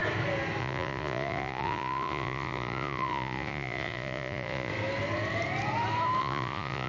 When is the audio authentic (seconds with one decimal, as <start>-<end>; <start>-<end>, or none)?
0.0-0.6; 4.7-6.2